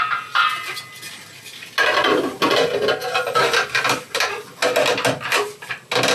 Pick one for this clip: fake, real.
real